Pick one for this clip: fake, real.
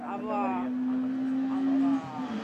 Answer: real